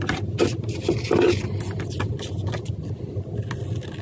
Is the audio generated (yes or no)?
no